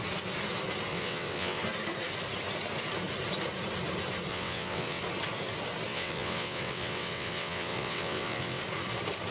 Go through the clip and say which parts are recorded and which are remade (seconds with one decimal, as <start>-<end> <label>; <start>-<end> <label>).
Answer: 0.0-0.9 recorded; 0.9-1.6 remade; 1.6-4.3 recorded; 4.3-5.0 remade; 5.0-5.9 recorded; 5.9-8.6 remade; 8.6-9.3 recorded